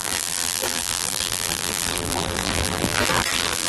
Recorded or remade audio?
remade